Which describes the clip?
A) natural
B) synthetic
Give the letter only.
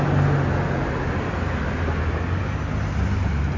A